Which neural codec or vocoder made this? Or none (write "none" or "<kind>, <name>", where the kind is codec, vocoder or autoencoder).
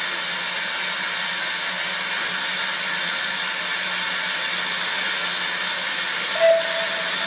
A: none